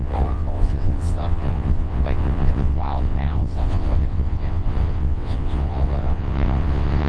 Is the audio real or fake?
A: fake